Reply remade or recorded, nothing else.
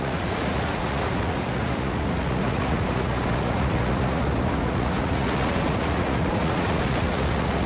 remade